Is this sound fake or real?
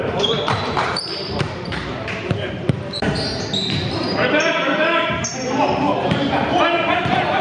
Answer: fake